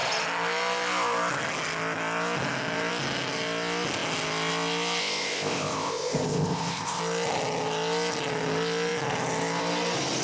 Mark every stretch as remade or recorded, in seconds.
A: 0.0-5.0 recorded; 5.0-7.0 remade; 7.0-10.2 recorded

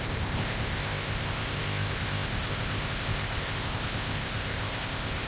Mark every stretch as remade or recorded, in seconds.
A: 0.0-5.3 remade

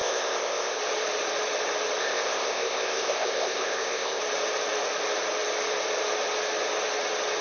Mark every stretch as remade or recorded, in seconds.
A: 0.0-0.8 remade; 0.8-2.0 recorded; 2.0-4.2 remade; 4.2-7.4 recorded

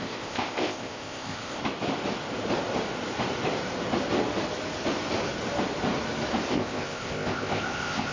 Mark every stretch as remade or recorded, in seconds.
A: 0.0-1.6 remade; 1.6-6.5 recorded; 6.5-8.1 remade

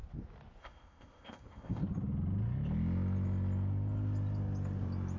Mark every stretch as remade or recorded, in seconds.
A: 0.0-0.6 recorded; 0.6-1.8 remade; 1.8-5.2 recorded

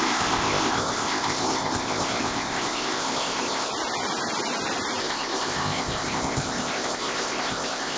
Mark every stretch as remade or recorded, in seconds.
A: 0.0-3.7 remade; 3.7-5.0 recorded; 5.0-8.0 remade